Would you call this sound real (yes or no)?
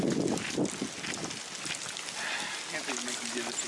yes